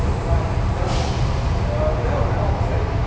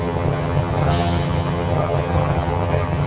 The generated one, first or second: second